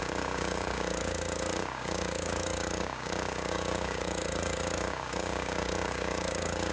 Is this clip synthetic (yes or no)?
yes